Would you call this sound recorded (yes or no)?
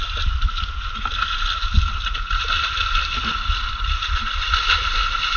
yes